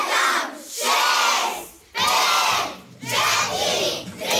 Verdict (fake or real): real